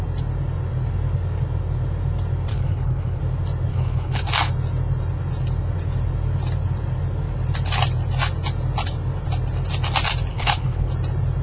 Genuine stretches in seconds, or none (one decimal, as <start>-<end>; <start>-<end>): 0.0-2.5; 3.2-3.7; 4.2-10.3; 10.9-11.4